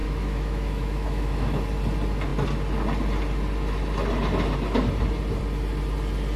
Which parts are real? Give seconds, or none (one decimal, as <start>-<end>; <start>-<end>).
1.6-6.4